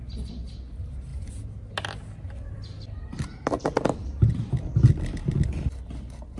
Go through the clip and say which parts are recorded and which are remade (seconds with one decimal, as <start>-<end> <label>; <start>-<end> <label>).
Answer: 0.0-6.4 recorded